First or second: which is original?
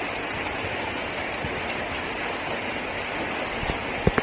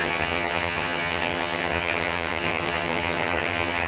first